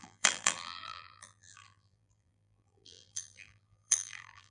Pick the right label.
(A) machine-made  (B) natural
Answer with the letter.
A